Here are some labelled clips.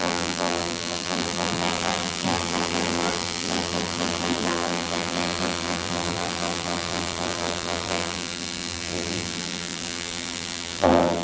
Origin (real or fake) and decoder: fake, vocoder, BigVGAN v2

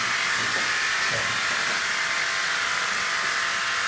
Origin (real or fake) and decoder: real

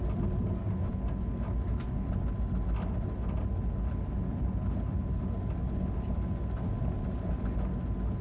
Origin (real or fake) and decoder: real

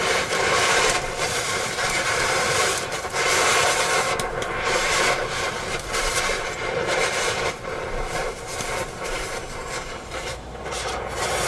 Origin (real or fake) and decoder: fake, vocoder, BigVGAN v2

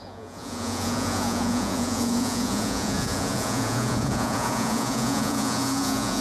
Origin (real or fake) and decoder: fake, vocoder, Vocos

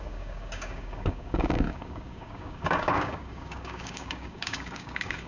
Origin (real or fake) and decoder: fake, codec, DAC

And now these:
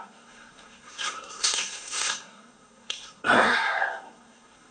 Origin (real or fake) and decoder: fake, codec, SNAC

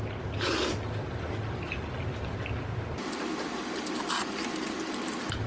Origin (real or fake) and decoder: real